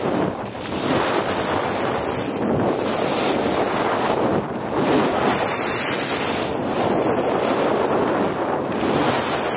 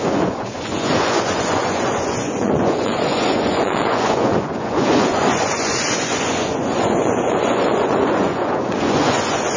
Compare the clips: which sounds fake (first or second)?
second